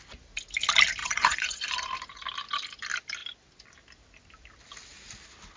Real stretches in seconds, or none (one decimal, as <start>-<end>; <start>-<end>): 0.0-1.0; 1.7-5.6